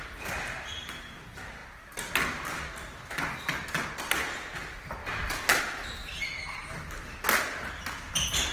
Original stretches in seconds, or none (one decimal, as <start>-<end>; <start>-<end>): 0.0-8.5